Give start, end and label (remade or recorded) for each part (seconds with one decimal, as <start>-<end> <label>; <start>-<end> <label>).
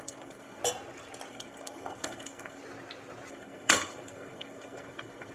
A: 0.0-0.6 remade; 0.6-1.3 recorded; 1.3-2.6 remade; 2.6-3.3 recorded; 3.3-5.3 remade